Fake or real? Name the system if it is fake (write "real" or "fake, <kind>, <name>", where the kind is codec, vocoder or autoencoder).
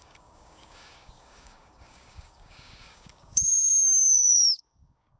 fake, codec, DAC